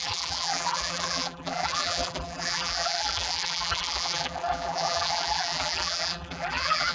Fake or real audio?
fake